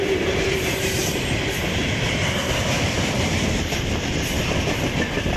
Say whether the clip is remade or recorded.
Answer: remade